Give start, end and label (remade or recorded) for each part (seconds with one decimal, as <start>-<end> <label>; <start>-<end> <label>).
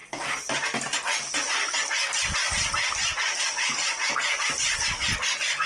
0.0-5.7 recorded